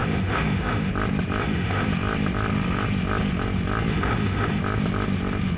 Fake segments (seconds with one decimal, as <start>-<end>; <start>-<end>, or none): 0.0-0.9; 1.4-1.9; 3.9-4.6